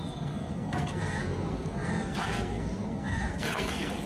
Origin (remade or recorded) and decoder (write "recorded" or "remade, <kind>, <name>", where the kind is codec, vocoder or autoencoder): remade, codec, SNAC